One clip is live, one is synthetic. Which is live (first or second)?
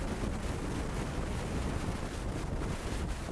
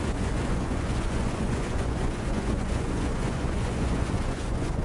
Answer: first